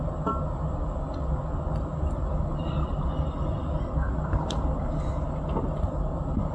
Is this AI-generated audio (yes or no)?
no